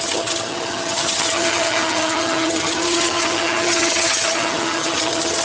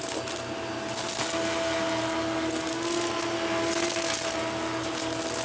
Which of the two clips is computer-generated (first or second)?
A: first